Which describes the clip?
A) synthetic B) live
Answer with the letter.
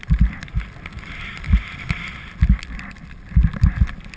B